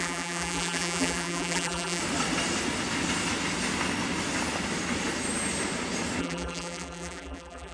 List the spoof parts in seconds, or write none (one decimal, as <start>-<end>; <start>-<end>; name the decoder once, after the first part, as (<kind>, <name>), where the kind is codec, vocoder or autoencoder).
0.0-2.0 (vocoder, BigVGAN v2); 6.2-7.7